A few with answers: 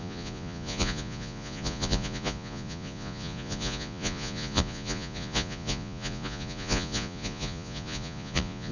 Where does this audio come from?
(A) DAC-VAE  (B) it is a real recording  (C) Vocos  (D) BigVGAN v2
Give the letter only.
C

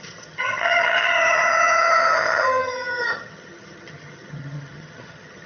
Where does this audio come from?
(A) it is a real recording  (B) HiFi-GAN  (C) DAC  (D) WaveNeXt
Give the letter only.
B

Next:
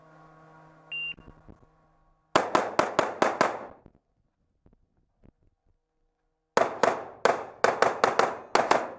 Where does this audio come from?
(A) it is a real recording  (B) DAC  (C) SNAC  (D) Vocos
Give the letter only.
A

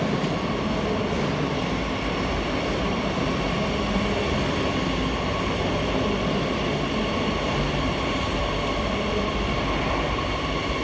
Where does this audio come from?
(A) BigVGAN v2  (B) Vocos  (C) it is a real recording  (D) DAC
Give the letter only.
C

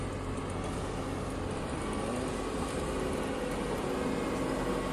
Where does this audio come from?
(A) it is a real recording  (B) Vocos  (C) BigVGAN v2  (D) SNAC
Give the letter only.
A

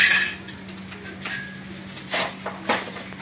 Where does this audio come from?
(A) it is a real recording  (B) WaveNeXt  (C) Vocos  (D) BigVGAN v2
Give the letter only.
A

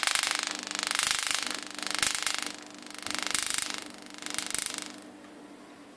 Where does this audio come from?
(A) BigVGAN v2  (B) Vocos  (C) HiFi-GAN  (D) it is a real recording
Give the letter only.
D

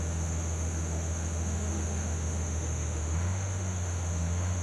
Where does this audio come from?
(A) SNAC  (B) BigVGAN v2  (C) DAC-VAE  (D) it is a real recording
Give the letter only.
C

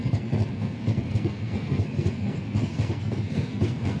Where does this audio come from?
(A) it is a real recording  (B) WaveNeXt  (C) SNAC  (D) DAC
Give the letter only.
C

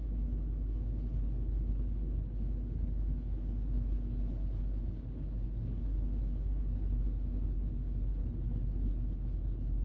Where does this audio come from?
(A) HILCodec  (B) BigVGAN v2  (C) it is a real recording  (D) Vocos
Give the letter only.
A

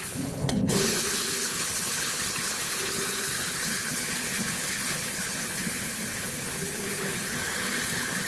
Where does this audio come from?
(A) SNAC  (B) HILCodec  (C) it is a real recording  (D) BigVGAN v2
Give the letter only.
B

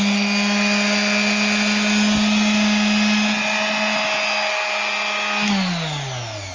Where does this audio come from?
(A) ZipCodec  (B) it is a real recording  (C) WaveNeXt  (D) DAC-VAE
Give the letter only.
B